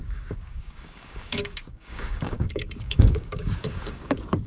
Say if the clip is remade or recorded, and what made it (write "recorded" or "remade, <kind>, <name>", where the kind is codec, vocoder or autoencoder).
remade, codec, DAC